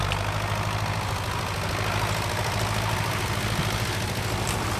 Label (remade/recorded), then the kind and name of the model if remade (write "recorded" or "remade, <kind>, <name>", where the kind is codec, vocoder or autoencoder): recorded